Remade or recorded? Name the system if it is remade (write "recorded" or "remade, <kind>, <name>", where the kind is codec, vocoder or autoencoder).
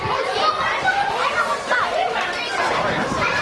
remade, vocoder, BigVGAN v2